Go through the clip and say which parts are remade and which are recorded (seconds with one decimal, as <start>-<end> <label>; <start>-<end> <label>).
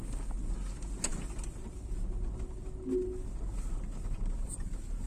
0.0-5.1 recorded